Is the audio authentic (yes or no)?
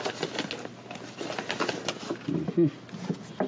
yes